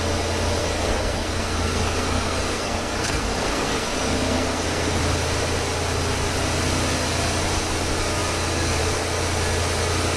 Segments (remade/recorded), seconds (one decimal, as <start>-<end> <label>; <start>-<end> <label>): 0.0-0.6 recorded; 0.6-5.0 remade; 5.0-10.2 recorded